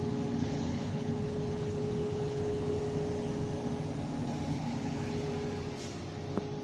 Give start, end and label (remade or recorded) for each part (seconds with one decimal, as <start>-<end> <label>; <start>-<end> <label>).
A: 0.0-0.4 recorded; 0.4-2.8 remade; 2.8-4.5 recorded; 4.5-5.3 remade; 5.3-6.6 recorded

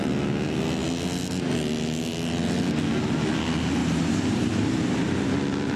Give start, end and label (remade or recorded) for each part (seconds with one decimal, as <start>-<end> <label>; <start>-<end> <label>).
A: 0.0-3.8 recorded; 3.8-5.2 remade; 5.2-5.8 recorded

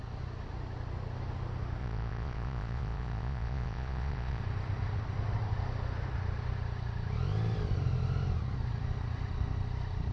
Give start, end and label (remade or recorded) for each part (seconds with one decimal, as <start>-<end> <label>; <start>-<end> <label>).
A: 0.0-1.8 recorded; 1.8-4.4 remade; 4.4-10.1 recorded

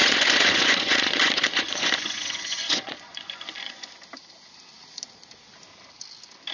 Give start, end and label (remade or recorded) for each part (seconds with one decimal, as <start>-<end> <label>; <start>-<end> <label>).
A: 0.0-3.9 remade; 3.9-6.5 recorded

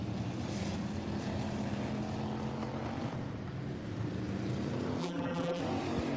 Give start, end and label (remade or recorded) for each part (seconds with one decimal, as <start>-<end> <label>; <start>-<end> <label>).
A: 0.0-5.0 recorded; 5.0-5.6 remade; 5.6-6.2 recorded

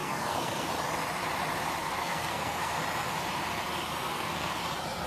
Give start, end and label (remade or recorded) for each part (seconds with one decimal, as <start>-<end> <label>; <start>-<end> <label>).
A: 0.0-0.7 remade; 0.7-1.8 recorded; 1.8-2.8 remade; 2.8-4.1 recorded; 4.1-4.6 remade; 4.6-5.1 recorded

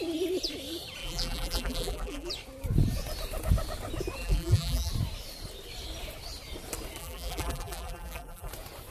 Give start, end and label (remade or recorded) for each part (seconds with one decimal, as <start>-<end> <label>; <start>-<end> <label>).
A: 0.0-1.0 recorded; 1.0-2.3 remade; 2.3-4.2 recorded; 4.2-4.9 remade; 4.9-7.0 recorded; 7.0-8.5 remade; 8.5-8.9 recorded